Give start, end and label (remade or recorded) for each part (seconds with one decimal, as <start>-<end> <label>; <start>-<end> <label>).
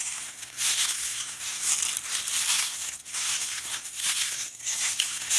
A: 0.0-1.7 remade; 1.7-2.5 recorded; 2.5-5.4 remade